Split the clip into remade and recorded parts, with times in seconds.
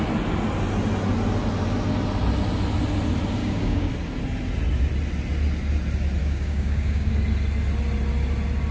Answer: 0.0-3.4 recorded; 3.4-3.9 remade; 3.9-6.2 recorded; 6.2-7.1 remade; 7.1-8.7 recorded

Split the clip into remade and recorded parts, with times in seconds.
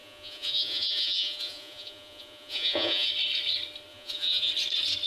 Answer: 0.0-3.1 remade; 3.1-3.9 recorded; 3.9-4.5 remade; 4.5-5.1 recorded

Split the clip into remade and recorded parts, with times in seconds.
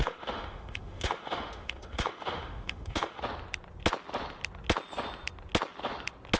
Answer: 0.0-3.2 remade; 3.2-6.4 recorded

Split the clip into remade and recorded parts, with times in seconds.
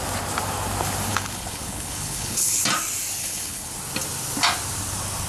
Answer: 0.0-1.1 recorded; 1.1-2.6 remade; 2.6-3.2 recorded; 3.2-3.7 remade; 3.7-5.3 recorded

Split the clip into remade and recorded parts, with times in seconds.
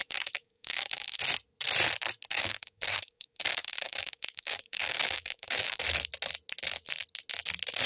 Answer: 0.0-1.2 remade; 1.2-2.3 recorded; 2.3-5.8 remade; 5.8-7.9 recorded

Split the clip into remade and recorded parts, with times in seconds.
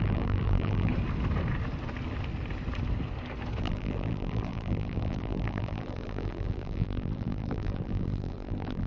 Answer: 0.0-0.9 remade; 0.9-3.6 recorded; 3.6-8.9 remade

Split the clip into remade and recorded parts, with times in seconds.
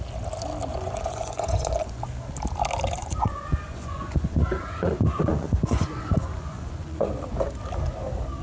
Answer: 0.0-0.7 recorded; 0.7-2.0 remade; 2.0-3.0 recorded; 3.0-7.1 remade; 7.1-8.4 recorded